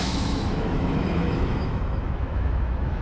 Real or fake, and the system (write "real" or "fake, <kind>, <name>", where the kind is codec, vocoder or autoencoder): fake, autoencoder, DAC-VAE